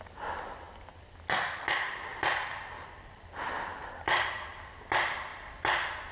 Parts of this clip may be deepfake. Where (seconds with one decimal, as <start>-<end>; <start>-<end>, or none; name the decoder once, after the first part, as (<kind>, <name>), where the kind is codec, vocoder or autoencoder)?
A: 2.1-3.3 (vocoder, BigVGAN v2); 3.8-4.5